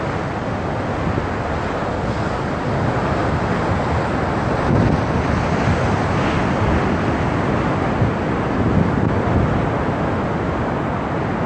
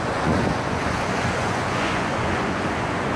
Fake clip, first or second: second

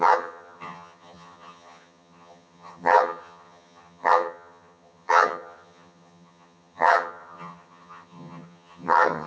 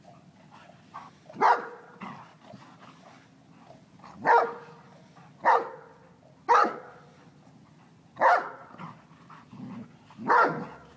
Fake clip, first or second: first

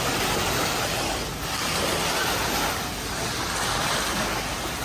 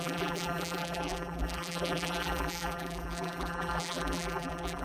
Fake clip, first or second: second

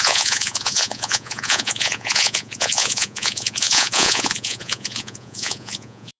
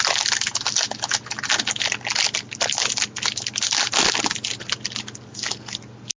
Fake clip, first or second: first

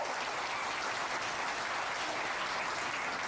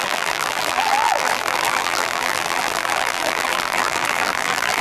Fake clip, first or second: second